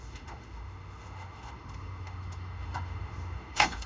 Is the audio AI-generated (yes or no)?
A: yes